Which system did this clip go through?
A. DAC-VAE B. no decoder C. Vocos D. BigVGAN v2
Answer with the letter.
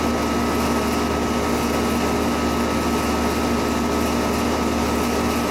B